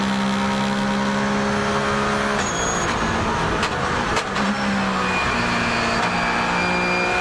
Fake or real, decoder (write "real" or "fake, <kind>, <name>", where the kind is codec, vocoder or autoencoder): real